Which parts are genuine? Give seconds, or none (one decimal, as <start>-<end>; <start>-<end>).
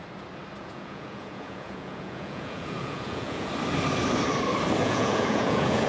0.0-0.6; 3.5-4.8